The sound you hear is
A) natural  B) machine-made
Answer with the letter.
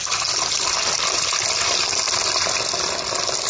A